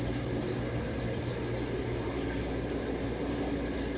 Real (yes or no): yes